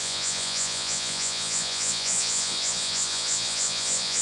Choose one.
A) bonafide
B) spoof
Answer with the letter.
B